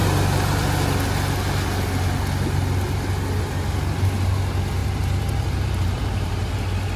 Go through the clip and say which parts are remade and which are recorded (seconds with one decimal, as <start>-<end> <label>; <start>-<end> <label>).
0.0-4.8 recorded; 4.8-6.5 remade; 6.5-7.0 recorded